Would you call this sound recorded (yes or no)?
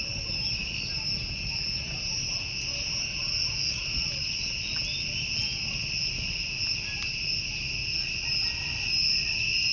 yes